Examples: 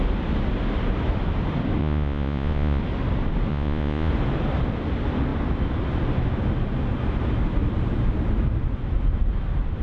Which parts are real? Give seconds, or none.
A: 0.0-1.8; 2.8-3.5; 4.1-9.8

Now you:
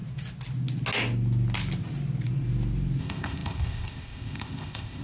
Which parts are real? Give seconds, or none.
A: 0.0-3.0

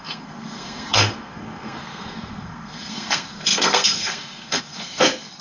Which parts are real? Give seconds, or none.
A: none

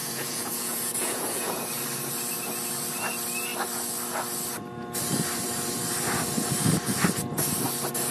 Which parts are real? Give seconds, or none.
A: 1.6-8.1

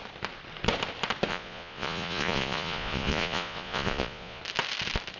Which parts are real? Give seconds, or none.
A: 0.0-1.3; 4.4-5.2